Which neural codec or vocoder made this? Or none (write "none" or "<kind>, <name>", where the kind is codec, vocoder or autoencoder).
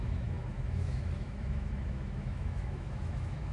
autoencoder, DAC-VAE